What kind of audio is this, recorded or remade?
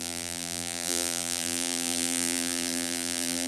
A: remade